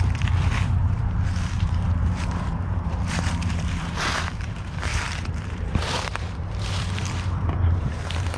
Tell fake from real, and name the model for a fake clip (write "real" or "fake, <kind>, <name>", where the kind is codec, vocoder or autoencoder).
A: fake, vocoder, BigVGAN v2